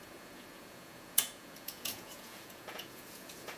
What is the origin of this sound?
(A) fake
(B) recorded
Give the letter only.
A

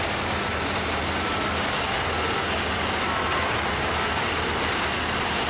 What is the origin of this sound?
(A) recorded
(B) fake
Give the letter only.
A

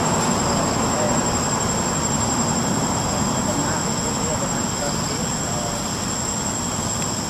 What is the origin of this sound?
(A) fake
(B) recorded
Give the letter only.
B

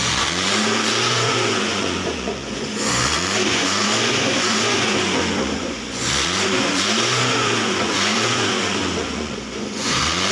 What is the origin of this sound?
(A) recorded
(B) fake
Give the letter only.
B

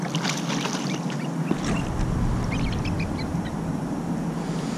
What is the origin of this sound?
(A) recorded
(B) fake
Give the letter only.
A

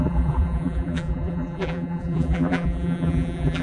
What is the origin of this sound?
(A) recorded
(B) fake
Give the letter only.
B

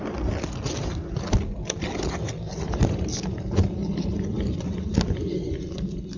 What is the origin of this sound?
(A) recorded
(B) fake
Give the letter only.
A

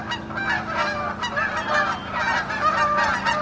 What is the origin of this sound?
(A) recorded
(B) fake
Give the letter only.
A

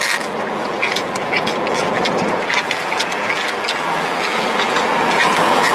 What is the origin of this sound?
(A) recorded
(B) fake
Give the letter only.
B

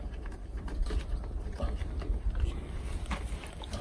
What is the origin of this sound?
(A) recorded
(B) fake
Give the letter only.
A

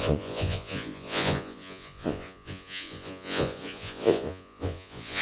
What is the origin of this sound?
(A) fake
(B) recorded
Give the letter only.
A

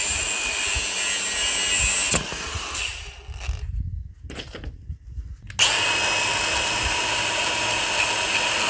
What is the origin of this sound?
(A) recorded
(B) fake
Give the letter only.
A